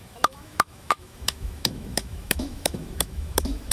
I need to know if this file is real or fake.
fake